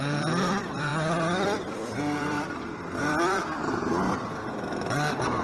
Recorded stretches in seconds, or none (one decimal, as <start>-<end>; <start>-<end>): none